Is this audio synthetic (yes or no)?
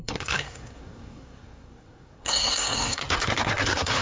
yes